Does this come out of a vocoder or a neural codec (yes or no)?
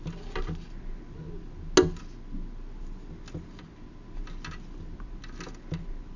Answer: no